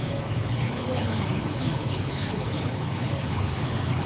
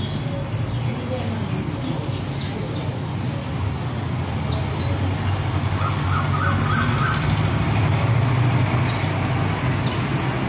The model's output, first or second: first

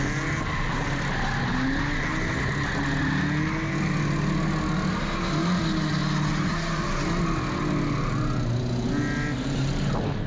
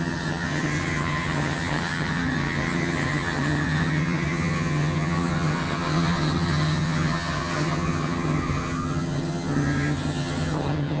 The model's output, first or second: second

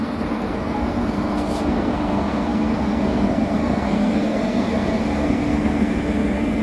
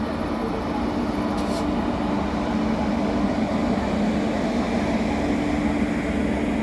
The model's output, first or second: first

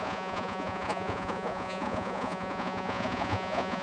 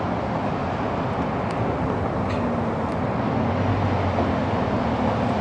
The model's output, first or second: first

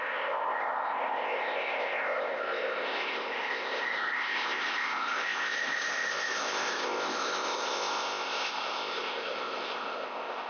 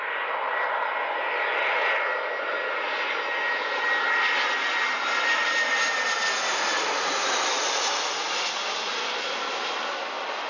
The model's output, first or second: first